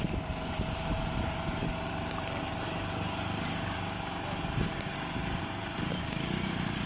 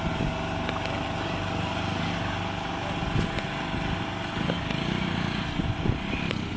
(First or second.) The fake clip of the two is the first